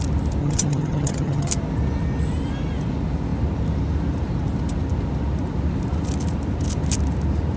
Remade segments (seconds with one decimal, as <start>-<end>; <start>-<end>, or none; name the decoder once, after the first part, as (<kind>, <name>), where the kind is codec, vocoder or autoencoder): 0.4-1.5 (vocoder, HiFi-GAN)